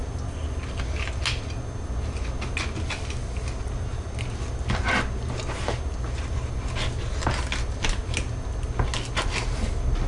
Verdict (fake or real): real